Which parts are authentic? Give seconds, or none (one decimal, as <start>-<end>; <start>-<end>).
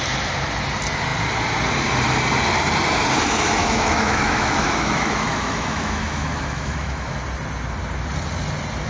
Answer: 0.0-3.6; 7.2-8.9